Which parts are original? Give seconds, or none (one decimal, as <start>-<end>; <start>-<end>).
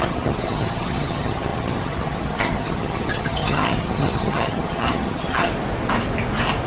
5.5-6.7